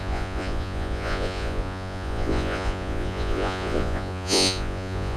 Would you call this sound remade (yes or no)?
yes